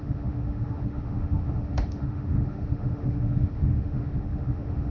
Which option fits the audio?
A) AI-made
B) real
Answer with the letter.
A